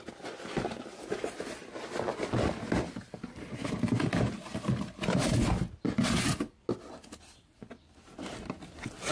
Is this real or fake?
real